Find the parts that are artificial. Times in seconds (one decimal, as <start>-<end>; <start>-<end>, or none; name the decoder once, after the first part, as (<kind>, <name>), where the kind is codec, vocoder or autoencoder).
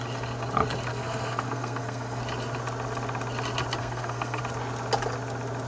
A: 0.9-2.2 (codec, SNAC); 3.8-4.4